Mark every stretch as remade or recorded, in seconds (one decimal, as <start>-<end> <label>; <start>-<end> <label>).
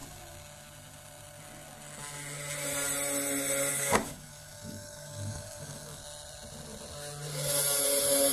0.0-3.7 recorded; 3.7-6.0 remade; 6.0-8.3 recorded